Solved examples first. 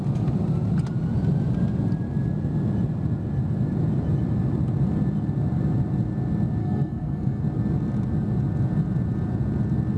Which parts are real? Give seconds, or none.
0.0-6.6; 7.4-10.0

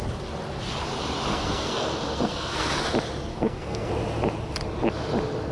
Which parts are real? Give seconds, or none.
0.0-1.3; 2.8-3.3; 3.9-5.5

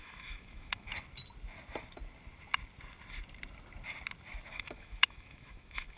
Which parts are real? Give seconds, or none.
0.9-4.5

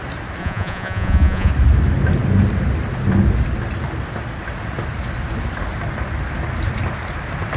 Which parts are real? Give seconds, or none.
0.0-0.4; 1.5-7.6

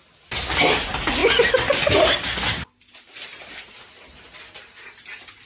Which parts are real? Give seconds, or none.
0.0-5.5